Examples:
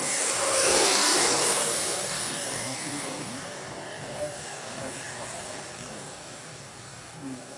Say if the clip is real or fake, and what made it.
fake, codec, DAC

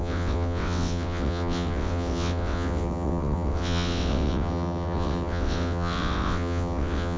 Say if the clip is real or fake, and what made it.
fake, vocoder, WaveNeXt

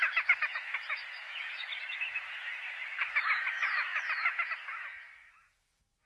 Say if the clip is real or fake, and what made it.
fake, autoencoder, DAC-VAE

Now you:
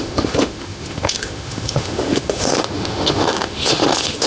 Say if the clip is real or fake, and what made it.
fake, autoencoder, DAC-VAE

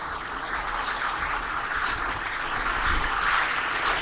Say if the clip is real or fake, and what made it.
real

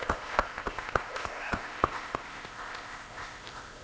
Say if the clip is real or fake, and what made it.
fake, codec, ZipCodec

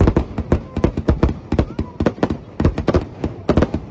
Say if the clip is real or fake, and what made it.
real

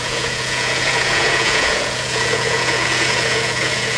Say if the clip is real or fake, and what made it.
fake, vocoder, Vocos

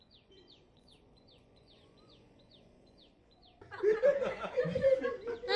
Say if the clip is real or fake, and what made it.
fake, vocoder, Vocos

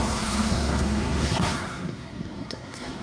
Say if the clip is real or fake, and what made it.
fake, codec, SNAC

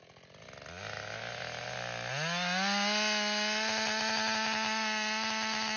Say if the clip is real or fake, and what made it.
real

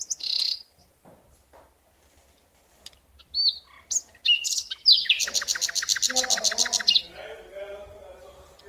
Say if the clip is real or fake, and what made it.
real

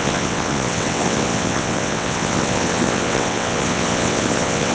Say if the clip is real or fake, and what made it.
fake, vocoder, WaveNeXt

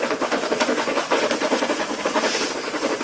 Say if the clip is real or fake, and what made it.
fake, vocoder, Vocos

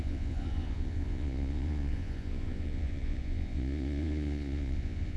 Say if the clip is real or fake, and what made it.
fake, vocoder, Vocos